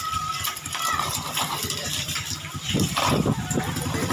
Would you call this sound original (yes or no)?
no